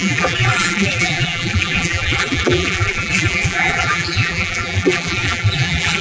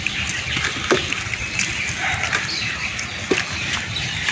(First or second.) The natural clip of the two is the second